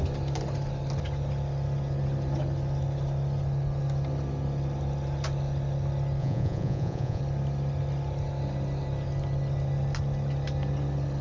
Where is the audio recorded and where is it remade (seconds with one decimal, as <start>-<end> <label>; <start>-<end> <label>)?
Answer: 0.0-6.2 recorded; 6.2-7.2 remade; 7.2-11.2 recorded